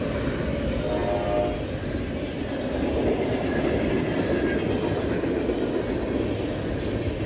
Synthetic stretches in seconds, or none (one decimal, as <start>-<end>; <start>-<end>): none